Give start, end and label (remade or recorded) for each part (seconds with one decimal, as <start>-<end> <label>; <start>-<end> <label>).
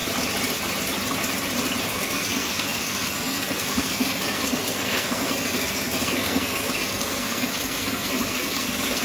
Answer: 0.0-1.9 recorded; 1.9-9.0 remade